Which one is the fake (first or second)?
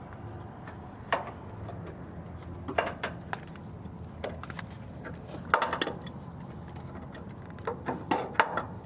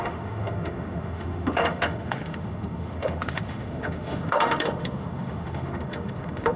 second